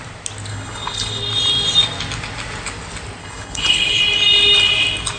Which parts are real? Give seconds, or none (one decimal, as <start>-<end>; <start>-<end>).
0.0-0.5; 1.2-3.2; 4.0-5.2